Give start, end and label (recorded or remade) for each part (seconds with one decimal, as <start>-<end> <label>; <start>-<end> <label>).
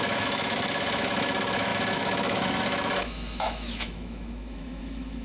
0.0-5.2 remade